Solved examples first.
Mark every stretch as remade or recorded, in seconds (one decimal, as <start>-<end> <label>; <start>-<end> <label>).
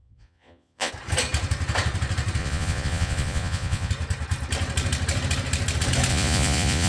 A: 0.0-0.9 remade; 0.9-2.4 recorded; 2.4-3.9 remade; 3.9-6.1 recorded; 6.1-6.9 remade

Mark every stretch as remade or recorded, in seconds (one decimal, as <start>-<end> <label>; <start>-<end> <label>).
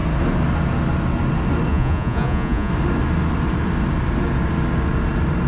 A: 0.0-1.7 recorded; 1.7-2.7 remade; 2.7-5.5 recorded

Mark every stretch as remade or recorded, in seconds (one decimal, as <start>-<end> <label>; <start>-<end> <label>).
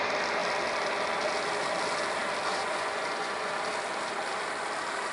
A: 0.0-2.5 recorded; 2.5-3.5 remade; 3.5-5.1 recorded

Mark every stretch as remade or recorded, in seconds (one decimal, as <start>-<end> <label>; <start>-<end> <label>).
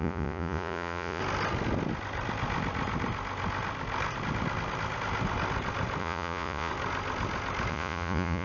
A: 0.0-1.2 remade; 1.2-6.0 recorded; 6.0-6.7 remade; 6.7-7.7 recorded; 7.7-8.4 remade